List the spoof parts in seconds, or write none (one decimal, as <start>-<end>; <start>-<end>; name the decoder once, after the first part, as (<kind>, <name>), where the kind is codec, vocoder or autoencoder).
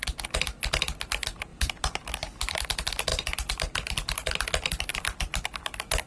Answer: 1.5-2.6 (vocoder, BigVGAN v2); 3.1-4.3; 4.9-6.1